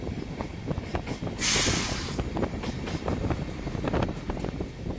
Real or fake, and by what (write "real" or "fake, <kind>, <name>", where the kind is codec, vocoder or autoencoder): real